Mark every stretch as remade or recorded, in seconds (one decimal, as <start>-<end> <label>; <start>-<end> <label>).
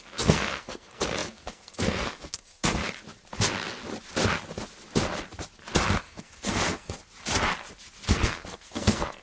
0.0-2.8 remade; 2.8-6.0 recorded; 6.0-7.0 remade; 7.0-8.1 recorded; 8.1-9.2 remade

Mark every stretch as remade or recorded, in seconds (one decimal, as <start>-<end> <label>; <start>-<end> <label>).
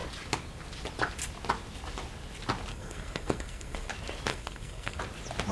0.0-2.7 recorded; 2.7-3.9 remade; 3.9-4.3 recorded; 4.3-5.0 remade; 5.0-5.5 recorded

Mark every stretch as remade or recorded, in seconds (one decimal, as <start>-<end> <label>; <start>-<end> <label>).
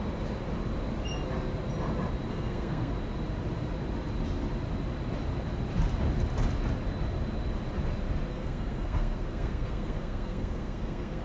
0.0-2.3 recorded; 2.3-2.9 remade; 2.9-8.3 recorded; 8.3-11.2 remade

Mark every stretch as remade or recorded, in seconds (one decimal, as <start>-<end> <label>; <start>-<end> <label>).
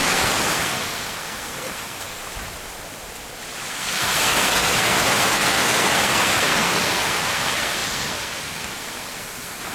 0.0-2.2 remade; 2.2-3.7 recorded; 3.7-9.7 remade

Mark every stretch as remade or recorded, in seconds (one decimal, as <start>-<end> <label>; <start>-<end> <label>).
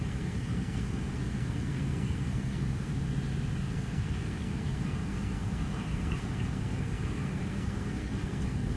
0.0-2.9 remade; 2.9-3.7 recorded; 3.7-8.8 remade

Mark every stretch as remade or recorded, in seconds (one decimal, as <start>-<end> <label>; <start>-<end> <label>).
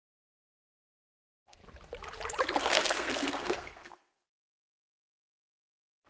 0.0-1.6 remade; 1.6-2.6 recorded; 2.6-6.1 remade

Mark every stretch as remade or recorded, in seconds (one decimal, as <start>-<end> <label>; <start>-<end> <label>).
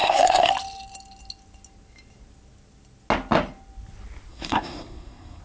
0.0-0.5 remade; 0.5-4.3 recorded; 4.3-5.4 remade